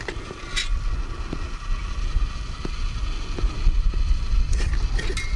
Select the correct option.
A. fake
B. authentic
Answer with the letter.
B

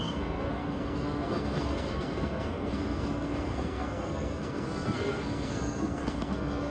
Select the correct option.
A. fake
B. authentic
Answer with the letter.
A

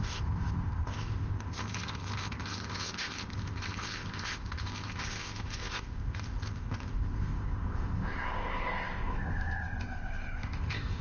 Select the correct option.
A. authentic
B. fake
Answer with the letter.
B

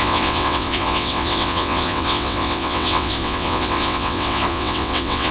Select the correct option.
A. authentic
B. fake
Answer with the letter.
B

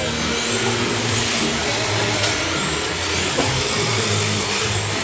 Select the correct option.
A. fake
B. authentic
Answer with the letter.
B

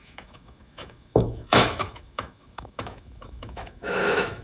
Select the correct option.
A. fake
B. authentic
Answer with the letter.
A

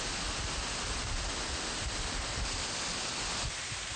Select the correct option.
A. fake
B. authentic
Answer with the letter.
B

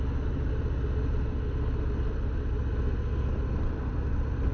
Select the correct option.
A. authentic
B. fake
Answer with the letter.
A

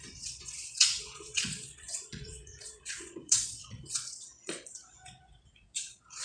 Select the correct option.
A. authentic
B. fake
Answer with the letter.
B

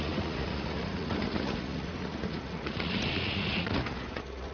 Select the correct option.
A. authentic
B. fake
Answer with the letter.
B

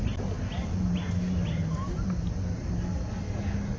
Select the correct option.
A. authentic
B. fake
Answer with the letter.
A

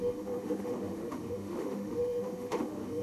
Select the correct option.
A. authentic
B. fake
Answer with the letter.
B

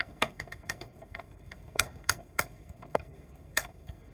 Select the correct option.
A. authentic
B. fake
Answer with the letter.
B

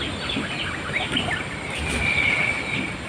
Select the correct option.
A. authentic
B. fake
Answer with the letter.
A